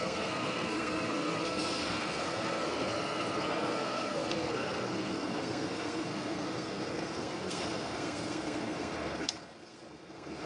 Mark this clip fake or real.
fake